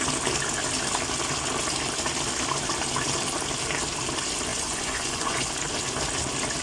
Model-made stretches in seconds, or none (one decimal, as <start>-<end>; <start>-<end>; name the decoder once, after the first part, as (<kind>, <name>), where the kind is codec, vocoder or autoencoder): 4.5-5.5 (vocoder, Vocos)